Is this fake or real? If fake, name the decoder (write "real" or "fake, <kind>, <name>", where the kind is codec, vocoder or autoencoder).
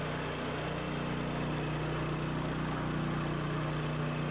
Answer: real